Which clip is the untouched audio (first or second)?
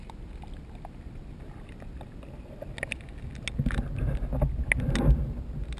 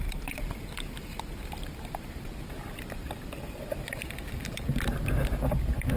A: first